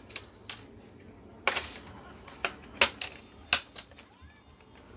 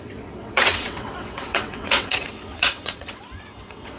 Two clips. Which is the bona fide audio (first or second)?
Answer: first